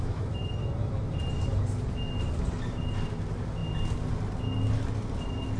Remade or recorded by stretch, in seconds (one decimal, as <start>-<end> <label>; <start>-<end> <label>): 0.0-0.5 remade; 0.5-5.6 recorded